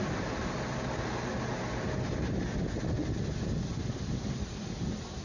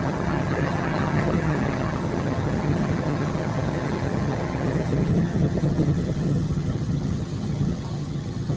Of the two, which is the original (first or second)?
first